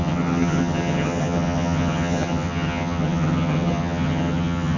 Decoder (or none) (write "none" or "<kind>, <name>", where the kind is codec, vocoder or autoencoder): vocoder, HiFi-GAN